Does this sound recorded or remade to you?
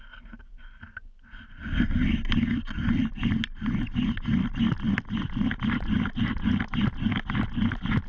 recorded